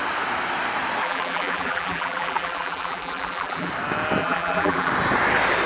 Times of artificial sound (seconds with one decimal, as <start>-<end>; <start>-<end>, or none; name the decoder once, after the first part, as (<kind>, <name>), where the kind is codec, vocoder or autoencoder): 1.0-3.7 (vocoder, BigVGAN v2); 4.2-4.9